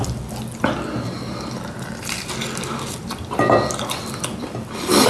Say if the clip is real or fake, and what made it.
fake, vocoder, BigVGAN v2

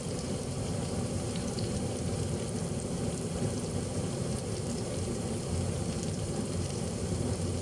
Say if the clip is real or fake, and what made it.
fake, vocoder, BigVGAN v2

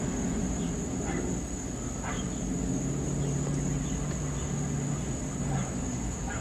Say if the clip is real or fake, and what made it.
real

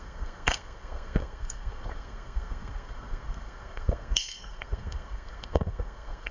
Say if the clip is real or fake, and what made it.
fake, codec, SNAC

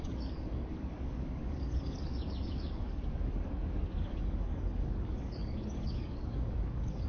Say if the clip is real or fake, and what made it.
fake, codec, DAC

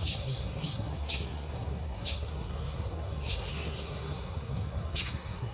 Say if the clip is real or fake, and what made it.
fake, codec, SNAC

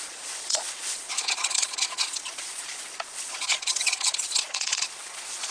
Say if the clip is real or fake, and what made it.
fake, vocoder, Vocos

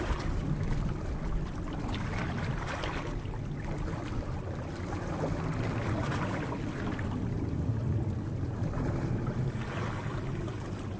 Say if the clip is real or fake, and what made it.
real